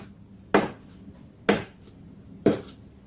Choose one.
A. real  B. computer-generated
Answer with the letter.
A